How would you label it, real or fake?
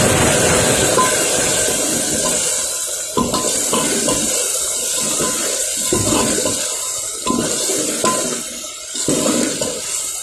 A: real